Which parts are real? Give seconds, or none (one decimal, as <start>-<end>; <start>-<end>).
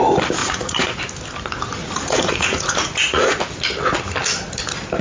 0.0-0.4; 1.0-1.8; 3.4-5.0